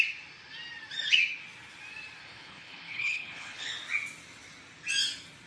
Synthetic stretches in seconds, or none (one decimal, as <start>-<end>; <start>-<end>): 2.3-3.7